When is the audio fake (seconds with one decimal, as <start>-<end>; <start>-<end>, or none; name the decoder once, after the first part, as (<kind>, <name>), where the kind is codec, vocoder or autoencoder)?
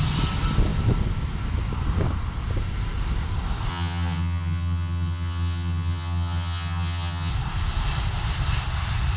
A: 3.7-7.3 (vocoder, HiFi-GAN)